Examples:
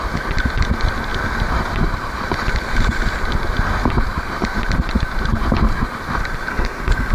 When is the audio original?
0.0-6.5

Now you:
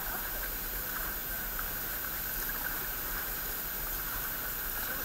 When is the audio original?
0.0-5.0

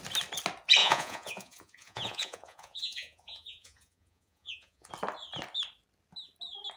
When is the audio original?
0.0-0.8; 4.9-6.8

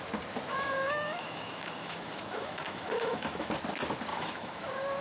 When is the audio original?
0.0-0.5; 3.5-4.1; 4.6-5.0

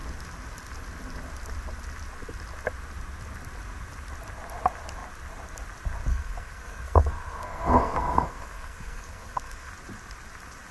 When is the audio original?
0.0-6.1; 9.7-10.7

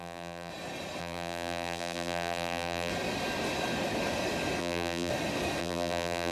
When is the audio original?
0.5-1.0; 2.9-4.6; 5.1-5.6

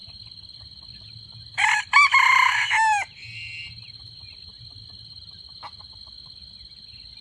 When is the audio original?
0.0-7.2